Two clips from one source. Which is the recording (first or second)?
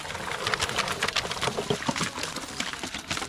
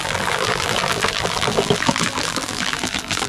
first